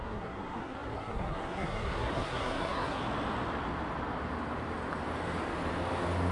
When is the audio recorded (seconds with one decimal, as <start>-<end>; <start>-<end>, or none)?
3.0-6.3